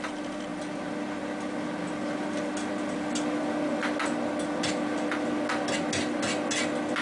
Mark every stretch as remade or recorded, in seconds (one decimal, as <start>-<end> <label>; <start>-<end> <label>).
0.0-7.0 recorded